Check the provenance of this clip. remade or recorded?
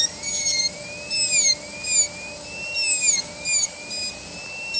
recorded